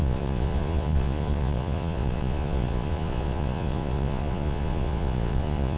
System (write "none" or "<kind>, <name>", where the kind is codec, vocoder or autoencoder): vocoder, Vocos